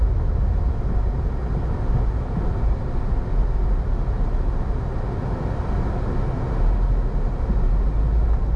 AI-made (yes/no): no